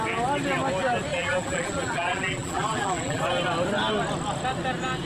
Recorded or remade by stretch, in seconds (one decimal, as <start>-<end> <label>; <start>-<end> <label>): 0.0-1.1 recorded; 1.1-3.2 remade; 3.2-5.1 recorded